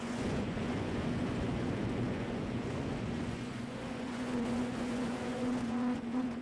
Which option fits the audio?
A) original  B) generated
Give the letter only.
B